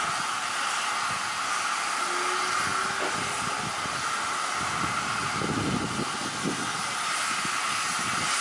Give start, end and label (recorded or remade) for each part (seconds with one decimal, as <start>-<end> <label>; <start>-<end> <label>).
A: 0.0-8.4 recorded